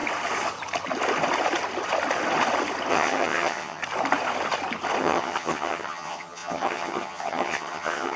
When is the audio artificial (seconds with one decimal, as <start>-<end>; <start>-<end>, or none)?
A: 2.9-3.8; 5.0-8.2